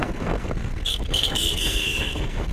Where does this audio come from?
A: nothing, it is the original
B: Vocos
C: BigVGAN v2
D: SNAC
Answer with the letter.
D